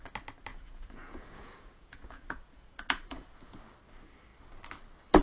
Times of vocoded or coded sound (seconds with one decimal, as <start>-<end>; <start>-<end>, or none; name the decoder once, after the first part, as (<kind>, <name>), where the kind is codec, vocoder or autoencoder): 0.5-3.6 (vocoder, Vocos)